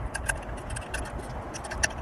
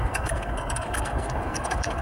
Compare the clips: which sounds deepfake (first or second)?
second